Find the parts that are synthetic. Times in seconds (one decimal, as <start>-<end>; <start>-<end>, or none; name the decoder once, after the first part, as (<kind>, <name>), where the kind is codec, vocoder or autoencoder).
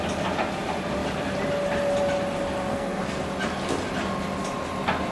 2.7-3.2 (codec, SNAC)